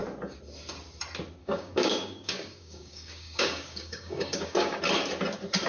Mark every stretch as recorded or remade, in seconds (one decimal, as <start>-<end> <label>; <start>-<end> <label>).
0.0-1.4 recorded; 1.4-4.8 remade; 4.8-5.7 recorded